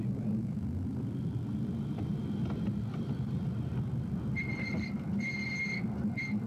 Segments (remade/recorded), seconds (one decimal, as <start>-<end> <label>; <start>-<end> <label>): 0.0-2.1 remade; 2.1-3.0 recorded; 3.0-3.7 remade; 3.7-6.5 recorded